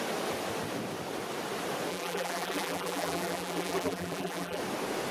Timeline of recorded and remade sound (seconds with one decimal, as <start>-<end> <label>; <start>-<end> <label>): 0.0-1.9 recorded; 1.9-4.6 remade; 4.6-5.1 recorded